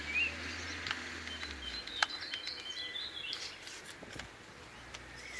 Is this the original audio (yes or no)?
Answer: yes